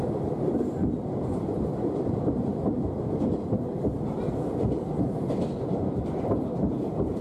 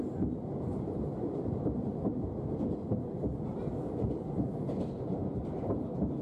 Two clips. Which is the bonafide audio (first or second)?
second